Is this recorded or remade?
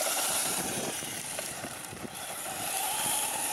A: remade